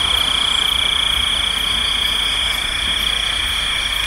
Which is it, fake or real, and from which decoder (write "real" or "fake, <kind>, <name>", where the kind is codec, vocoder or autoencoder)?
real